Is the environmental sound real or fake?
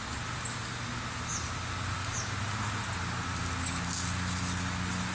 real